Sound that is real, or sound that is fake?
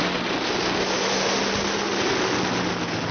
real